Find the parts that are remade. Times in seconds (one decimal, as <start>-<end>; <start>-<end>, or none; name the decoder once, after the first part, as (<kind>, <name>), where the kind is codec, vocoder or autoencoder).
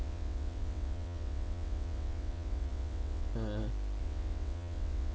0.0-3.3 (vocoder, WaveNeXt); 4.0-5.1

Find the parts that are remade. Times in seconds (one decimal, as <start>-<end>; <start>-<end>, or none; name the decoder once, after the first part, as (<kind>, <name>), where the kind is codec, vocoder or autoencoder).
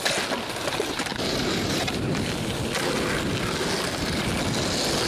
1.1-2.2 (vocoder, BigVGAN v2)